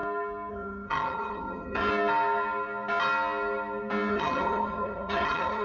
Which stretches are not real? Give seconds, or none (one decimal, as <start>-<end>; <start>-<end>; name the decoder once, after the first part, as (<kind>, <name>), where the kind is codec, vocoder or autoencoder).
0.5-1.9 (vocoder, HiFi-GAN); 4.1-5.6